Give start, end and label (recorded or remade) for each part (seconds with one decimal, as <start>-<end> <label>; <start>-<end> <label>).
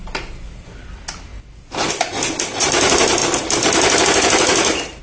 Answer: 0.0-5.0 recorded